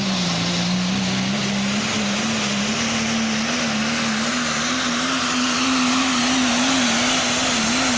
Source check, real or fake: real